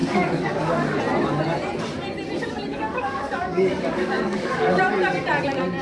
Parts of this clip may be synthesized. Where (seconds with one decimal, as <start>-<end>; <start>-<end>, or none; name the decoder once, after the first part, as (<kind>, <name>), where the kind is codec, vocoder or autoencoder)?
0.0-1.0 (codec, DAC); 2.7-4.8